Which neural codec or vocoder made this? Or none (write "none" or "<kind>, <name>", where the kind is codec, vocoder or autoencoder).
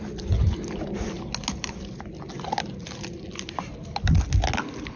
none